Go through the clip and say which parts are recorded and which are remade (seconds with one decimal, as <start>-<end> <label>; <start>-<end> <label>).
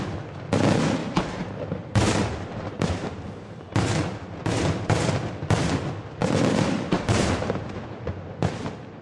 0.0-1.0 recorded; 1.0-3.6 remade; 3.6-6.2 recorded; 6.2-7.8 remade; 7.8-9.0 recorded